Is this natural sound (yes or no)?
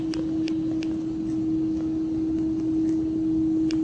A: yes